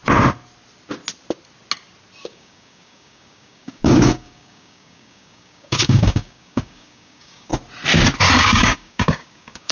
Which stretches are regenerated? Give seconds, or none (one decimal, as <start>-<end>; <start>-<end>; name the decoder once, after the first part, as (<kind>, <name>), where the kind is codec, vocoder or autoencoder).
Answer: 2.2-7.5 (codec, DAC); 8.4-9.7